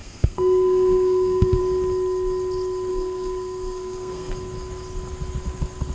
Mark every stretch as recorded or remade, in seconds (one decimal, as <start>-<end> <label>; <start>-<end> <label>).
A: 0.0-1.6 remade; 1.6-2.9 recorded; 2.9-4.3 remade; 4.3-5.9 recorded